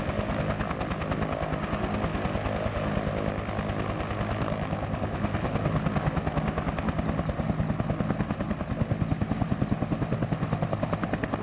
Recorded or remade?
recorded